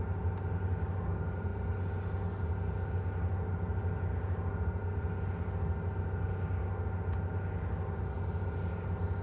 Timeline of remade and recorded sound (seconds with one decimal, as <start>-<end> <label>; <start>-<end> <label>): 0.0-9.2 recorded